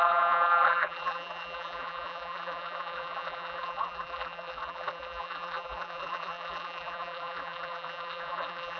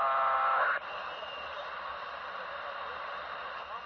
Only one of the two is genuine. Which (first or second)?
second